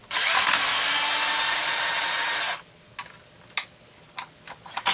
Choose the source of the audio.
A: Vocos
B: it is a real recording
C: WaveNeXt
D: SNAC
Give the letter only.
B